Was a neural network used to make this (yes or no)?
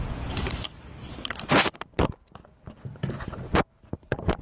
no